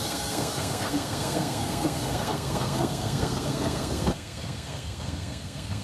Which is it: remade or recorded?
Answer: remade